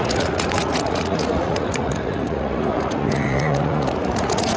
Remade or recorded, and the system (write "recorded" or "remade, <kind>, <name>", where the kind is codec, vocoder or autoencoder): remade, vocoder, Vocos